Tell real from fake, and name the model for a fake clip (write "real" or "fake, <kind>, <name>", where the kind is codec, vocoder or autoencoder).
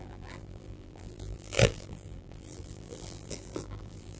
fake, vocoder, BigVGAN v2